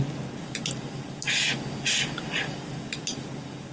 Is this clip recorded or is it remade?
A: recorded